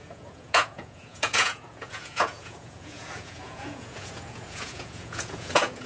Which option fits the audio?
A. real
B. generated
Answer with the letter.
B